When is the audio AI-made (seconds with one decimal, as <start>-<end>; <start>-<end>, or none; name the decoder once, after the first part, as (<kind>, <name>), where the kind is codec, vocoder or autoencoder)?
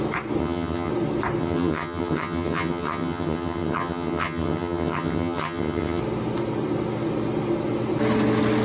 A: 0.4-0.9 (vocoder, HiFi-GAN); 1.4-6.0